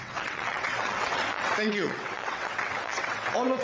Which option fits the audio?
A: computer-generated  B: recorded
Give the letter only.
A